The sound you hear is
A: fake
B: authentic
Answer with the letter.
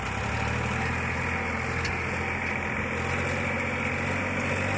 B